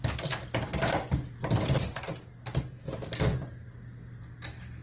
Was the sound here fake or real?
real